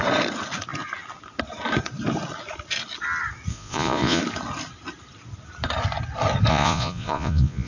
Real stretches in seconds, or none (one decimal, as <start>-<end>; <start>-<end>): 0.0-3.5; 4.2-6.5